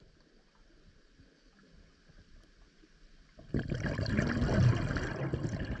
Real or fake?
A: real